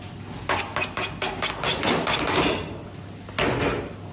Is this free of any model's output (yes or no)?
yes